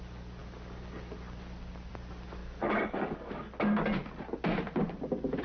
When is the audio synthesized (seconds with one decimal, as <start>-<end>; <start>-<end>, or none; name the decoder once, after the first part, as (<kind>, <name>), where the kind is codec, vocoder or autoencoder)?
2.4-3.3 (codec, DAC)